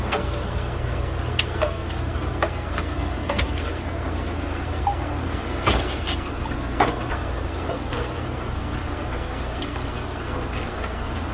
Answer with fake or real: fake